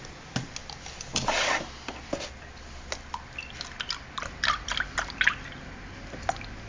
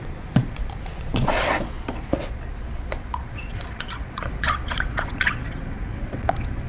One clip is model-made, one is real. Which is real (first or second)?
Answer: first